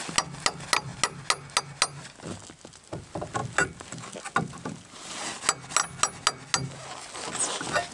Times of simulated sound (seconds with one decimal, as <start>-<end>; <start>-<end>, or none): none